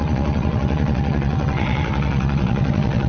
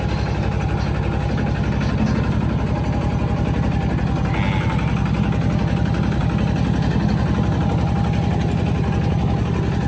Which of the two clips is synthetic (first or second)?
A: first